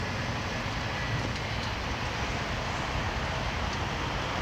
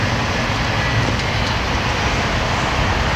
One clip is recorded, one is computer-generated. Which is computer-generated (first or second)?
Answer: first